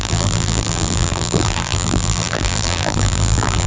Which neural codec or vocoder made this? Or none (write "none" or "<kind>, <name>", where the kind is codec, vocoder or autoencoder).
vocoder, BigVGAN v2